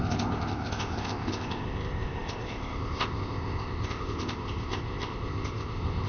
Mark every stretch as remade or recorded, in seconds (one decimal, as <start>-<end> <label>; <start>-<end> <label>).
0.0-6.1 remade

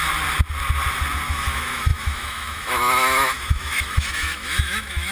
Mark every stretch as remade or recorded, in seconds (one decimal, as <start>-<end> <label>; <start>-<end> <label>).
0.0-1.3 recorded; 1.3-5.1 remade

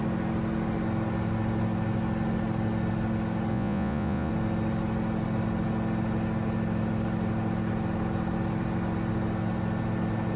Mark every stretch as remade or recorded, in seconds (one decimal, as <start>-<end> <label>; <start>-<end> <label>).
0.0-3.5 recorded; 3.5-4.3 remade; 4.3-10.4 recorded

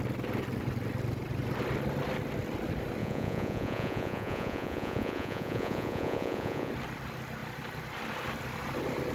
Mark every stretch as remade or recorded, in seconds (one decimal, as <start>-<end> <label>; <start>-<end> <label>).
0.0-3.0 recorded; 3.0-6.7 remade; 6.7-9.1 recorded